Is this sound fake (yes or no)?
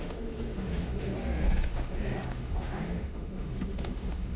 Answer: yes